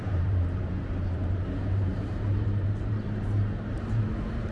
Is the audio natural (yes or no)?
no